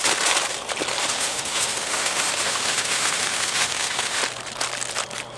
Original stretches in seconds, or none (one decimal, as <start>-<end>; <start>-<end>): 0.0-1.0; 4.2-5.4